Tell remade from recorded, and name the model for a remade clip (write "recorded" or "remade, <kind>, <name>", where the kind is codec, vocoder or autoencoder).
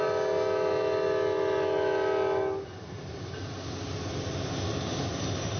recorded